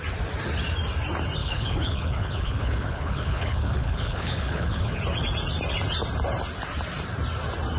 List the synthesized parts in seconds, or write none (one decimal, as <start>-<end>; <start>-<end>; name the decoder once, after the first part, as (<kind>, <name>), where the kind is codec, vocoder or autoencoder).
1.4-5.0 (codec, HILCodec)